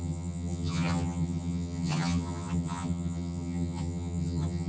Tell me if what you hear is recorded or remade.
remade